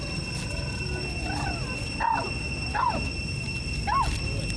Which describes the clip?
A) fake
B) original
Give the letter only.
B